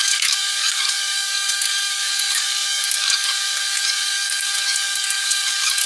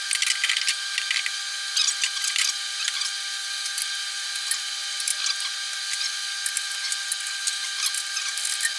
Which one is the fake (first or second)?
first